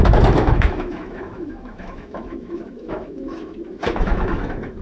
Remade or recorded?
remade